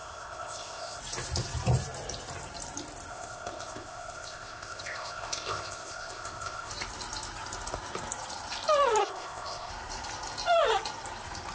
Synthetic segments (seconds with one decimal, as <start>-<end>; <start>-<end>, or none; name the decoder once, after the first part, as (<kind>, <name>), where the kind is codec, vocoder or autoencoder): 0.0-1.0 (codec, ZipCodec); 3.1-6.7; 9.0-9.7